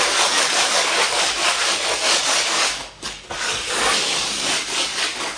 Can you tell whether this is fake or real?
fake